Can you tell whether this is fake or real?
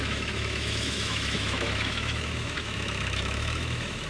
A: fake